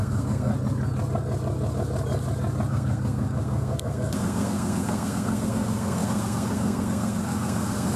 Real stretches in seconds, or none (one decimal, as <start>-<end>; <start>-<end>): 0.5-2.7